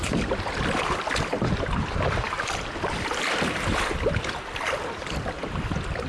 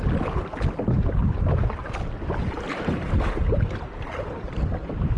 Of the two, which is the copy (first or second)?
first